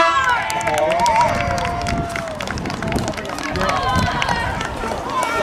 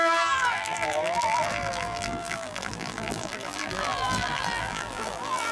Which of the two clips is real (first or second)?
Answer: first